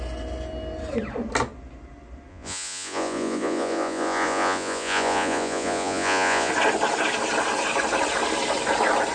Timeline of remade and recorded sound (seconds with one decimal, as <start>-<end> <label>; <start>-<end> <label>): 0.0-2.3 recorded; 2.3-6.5 remade; 6.5-9.1 recorded